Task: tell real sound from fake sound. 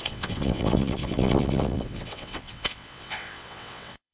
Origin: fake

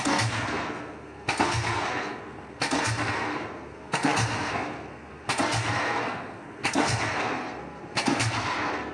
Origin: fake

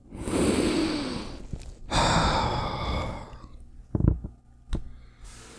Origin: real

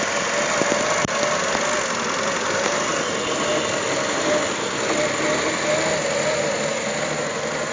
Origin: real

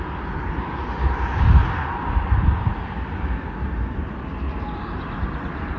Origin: real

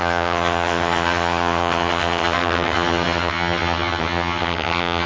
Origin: fake